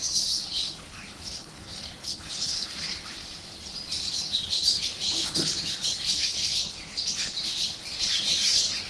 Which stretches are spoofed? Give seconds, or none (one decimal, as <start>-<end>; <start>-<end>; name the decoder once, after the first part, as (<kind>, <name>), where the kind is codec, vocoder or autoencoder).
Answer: 0.0-3.2 (codec, HILCodec); 4.1-8.9

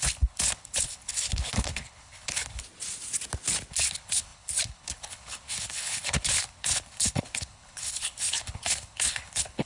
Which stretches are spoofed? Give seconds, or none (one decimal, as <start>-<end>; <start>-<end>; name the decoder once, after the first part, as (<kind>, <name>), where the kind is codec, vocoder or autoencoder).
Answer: 0.0-2.6 (codec, HILCodec); 3.7-9.7

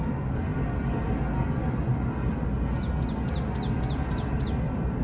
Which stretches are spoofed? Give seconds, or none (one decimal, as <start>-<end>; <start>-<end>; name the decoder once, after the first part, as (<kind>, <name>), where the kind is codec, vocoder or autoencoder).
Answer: none

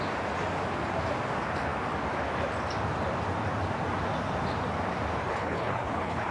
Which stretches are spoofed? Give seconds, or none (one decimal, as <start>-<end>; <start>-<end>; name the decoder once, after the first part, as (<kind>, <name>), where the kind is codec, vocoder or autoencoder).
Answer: 5.3-6.3 (codec, HILCodec)